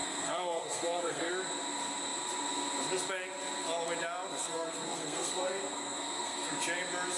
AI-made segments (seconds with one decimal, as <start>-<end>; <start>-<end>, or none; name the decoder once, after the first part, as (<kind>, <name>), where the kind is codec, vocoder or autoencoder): 0.0-1.3 (codec, SNAC); 4.4-6.5